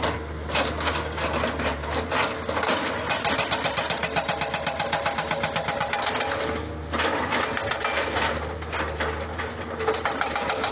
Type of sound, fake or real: real